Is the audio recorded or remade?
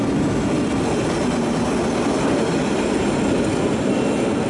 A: recorded